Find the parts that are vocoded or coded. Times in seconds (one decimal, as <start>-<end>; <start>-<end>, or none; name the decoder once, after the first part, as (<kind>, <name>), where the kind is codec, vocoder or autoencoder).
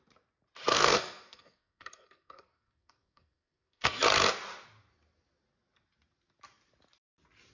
0.7-4.0 (codec, SNAC)